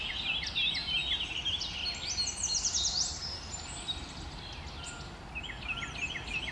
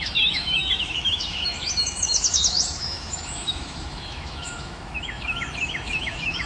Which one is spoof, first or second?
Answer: second